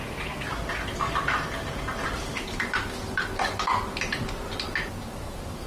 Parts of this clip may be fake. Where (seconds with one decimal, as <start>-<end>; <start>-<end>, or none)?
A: none